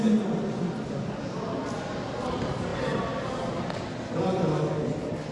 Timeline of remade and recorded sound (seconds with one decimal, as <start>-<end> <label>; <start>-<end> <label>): 0.0-5.3 recorded